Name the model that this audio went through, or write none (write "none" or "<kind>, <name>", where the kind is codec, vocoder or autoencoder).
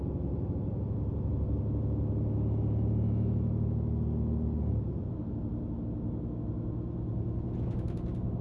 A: none